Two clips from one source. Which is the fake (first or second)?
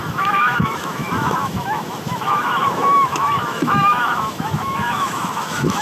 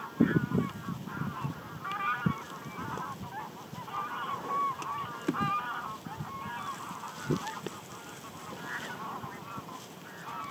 first